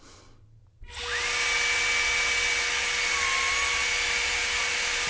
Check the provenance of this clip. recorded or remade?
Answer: recorded